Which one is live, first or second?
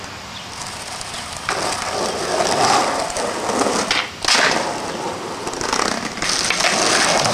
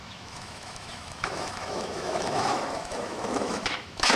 first